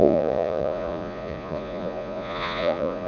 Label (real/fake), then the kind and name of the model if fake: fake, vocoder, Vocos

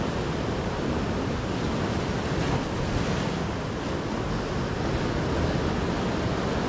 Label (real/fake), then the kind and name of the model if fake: real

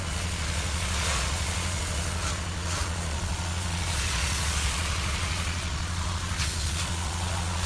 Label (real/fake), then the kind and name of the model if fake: fake, vocoder, Vocos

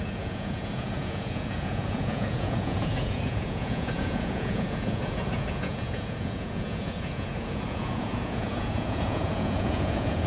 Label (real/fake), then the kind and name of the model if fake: fake, vocoder, Vocos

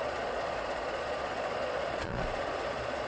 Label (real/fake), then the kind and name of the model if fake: fake, vocoder, Vocos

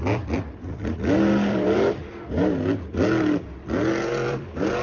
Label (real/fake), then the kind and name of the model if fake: real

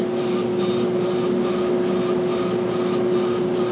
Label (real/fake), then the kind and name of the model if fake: real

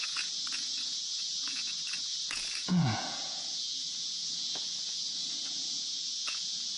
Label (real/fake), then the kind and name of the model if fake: fake, vocoder, Vocos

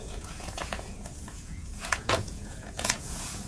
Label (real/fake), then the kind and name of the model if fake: fake, vocoder, Vocos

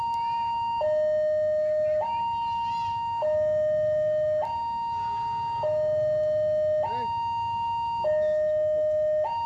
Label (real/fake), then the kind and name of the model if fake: real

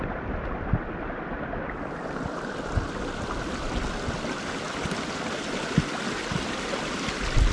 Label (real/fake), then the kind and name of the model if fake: real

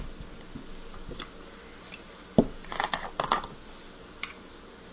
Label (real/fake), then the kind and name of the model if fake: real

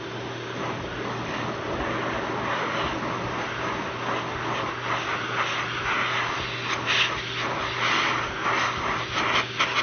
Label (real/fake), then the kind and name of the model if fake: real